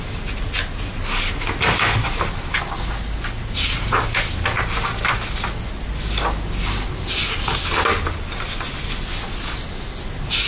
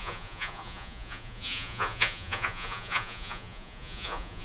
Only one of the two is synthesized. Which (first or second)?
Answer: second